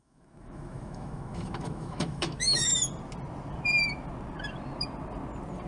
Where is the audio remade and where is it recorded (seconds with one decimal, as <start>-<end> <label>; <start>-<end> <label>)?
0.0-2.7 remade; 2.7-5.7 recorded